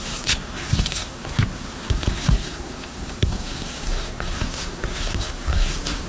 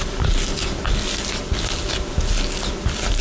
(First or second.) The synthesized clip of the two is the first